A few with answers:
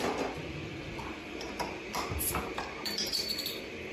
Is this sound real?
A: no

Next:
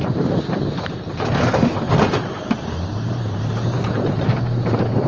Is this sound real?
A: no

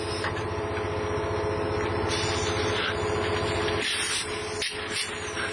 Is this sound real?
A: yes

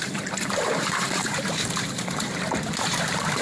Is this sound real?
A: no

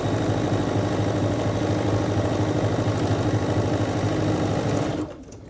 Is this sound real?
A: yes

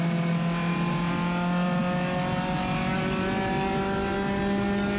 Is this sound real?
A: yes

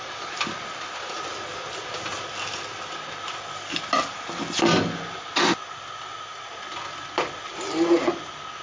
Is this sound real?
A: yes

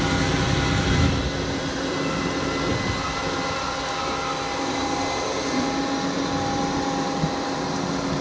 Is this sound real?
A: yes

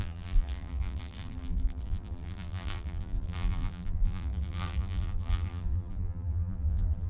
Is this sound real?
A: no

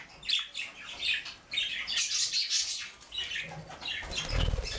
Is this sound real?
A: yes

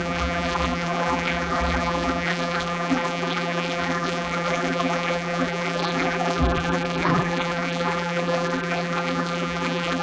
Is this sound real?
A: no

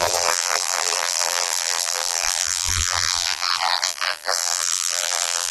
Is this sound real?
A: no